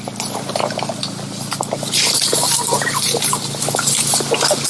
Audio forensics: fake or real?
real